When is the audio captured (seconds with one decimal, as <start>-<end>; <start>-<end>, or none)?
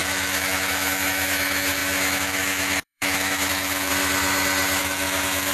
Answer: 3.9-4.8